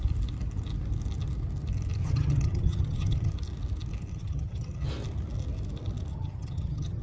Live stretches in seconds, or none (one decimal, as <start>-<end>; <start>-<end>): 0.0-2.0; 3.3-4.1; 4.9-6.1